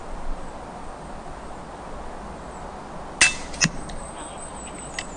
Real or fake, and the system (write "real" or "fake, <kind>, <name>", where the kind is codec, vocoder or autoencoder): real